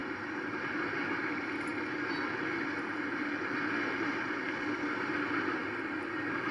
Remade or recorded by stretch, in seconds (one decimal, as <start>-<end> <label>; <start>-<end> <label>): 0.0-6.5 recorded